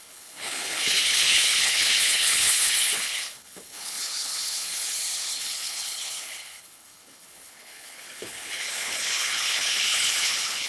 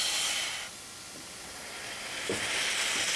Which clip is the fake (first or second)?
first